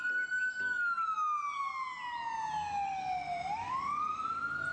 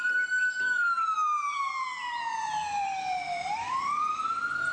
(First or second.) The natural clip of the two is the first